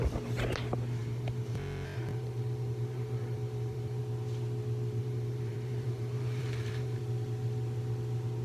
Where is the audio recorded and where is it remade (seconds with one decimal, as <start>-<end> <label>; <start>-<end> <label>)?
0.0-1.0 recorded; 1.0-4.0 remade; 4.0-5.0 recorded; 5.0-7.0 remade; 7.0-8.4 recorded